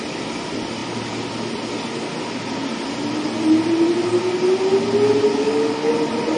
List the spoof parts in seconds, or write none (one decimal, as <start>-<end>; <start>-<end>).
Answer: 5.3-5.9